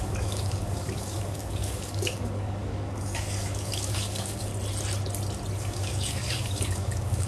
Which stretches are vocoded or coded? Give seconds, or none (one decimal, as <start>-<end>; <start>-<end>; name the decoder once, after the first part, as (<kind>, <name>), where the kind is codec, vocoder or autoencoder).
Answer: 0.0-4.5 (codec, DAC); 5.6-7.3